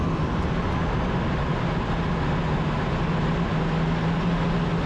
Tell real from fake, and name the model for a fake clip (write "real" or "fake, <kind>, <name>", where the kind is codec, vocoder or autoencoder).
real